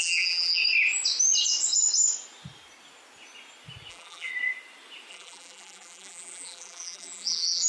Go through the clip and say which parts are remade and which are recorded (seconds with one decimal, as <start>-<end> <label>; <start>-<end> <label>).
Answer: 0.0-0.6 remade; 0.6-3.9 recorded; 3.9-4.3 remade; 4.3-5.1 recorded; 5.1-7.7 remade